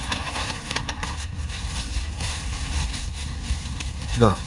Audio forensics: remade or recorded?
remade